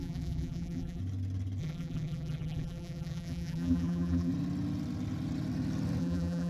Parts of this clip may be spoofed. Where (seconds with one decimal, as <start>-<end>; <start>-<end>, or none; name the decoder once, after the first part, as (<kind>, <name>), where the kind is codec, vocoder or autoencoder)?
0.0-1.0 (vocoder, BigVGAN v2); 1.6-4.3; 6.0-6.5

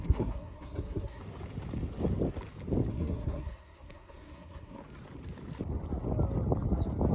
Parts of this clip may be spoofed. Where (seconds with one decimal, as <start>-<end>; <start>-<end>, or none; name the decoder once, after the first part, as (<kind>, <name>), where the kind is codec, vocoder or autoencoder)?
0.0-1.2 (codec, SNAC); 2.9-4.8

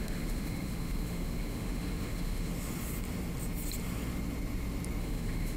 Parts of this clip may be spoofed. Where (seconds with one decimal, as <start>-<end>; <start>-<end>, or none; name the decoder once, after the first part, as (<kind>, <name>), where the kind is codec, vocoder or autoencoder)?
0.0-2.5 (autoencoder, DAC-VAE); 5.0-5.6